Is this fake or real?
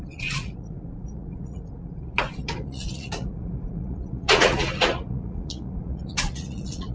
fake